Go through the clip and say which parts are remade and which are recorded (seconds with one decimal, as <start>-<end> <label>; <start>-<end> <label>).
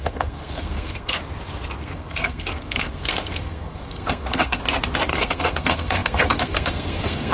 0.0-1.2 remade; 1.2-1.8 recorded; 1.8-4.6 remade; 4.6-5.1 recorded; 5.1-7.3 remade